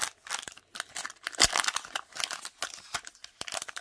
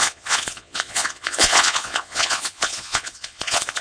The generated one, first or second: second